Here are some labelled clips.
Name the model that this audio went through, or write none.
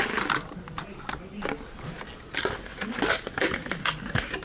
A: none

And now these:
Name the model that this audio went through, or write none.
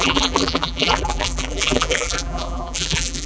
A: vocoder, BigVGAN v2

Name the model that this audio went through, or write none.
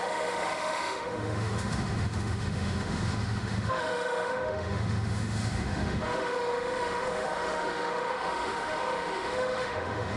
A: autoencoder, DAC-VAE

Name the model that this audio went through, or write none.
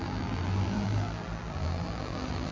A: vocoder, BigVGAN v2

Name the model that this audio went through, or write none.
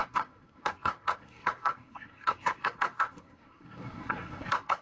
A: codec, SNAC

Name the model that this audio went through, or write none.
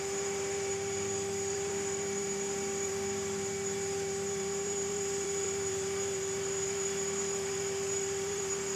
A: vocoder, BigVGAN v2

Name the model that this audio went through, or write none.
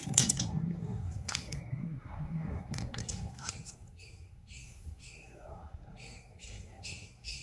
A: codec, SNAC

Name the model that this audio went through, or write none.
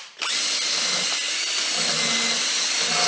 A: none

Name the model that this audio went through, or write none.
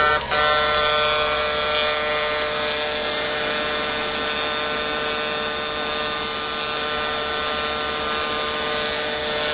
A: none